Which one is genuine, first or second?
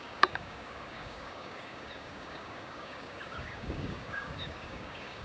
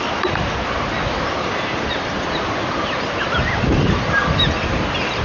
second